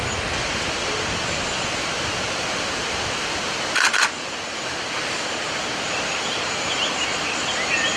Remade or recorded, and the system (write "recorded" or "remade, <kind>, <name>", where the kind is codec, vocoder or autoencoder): recorded